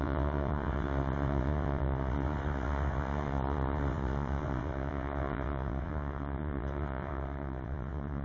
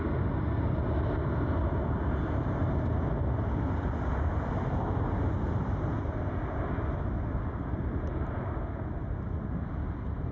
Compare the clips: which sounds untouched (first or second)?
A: second